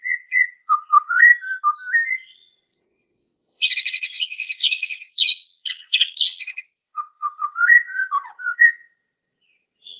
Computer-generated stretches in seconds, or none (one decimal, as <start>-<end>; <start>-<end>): 0.0-1.3; 2.1-10.0